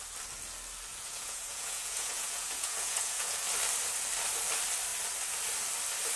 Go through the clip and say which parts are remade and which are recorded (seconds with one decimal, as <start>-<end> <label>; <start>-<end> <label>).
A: 0.0-0.9 recorded; 0.9-3.4 remade; 3.4-6.2 recorded